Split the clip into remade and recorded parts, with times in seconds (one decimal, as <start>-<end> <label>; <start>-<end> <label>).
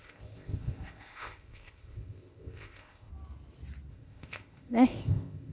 0.0-3.1 remade; 3.1-3.9 recorded; 3.9-5.5 remade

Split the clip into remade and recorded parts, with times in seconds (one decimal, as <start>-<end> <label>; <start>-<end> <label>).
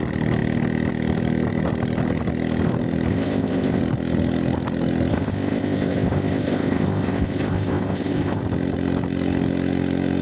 0.0-3.1 recorded; 3.1-3.8 remade; 3.8-5.1 recorded; 5.1-8.4 remade; 8.4-10.2 recorded